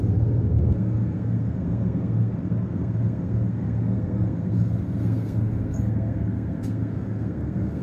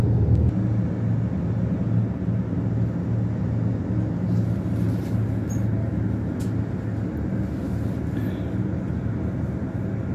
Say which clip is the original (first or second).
second